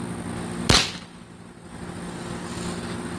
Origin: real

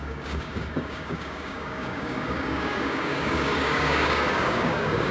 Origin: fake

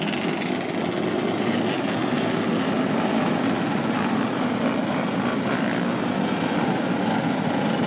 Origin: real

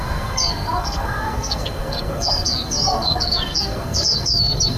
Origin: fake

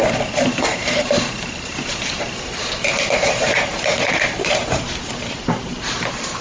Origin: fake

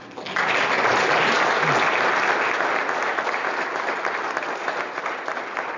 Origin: real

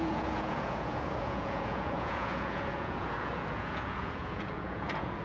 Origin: fake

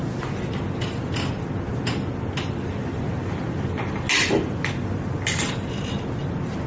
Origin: real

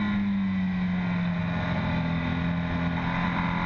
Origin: real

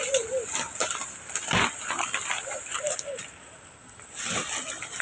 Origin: real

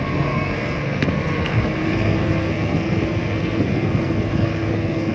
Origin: fake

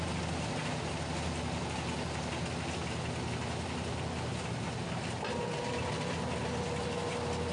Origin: real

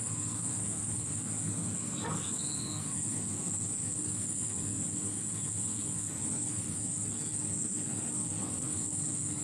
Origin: fake